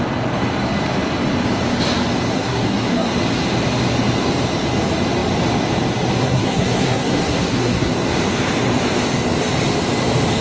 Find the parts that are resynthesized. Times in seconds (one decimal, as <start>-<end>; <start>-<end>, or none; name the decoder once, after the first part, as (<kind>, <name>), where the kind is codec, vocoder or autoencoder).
2.3-3.1 (codec, SNAC); 6.2-7.9